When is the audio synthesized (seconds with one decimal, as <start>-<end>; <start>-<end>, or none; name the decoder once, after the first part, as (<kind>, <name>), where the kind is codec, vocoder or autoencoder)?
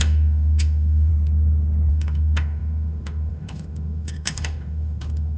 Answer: 0.0-1.1 (autoencoder, DAC-VAE); 1.9-5.4